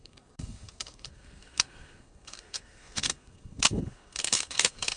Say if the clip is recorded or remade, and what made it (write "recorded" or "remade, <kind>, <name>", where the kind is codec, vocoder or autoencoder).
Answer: remade, codec, SNAC